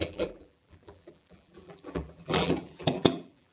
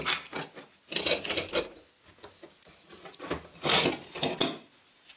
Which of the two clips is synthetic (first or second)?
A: first